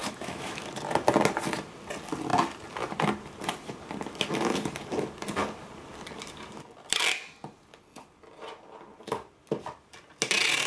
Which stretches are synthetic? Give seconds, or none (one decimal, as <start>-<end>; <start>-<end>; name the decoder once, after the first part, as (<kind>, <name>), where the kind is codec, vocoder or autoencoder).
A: 0.0-0.6 (autoencoder, DAC-VAE)